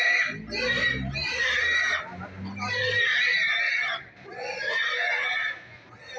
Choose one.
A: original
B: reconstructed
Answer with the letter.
A